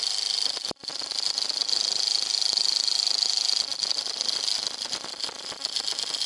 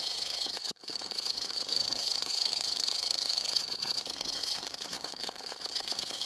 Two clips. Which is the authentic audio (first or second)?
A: first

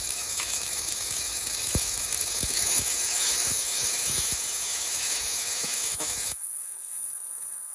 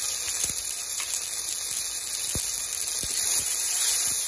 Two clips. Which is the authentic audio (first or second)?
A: second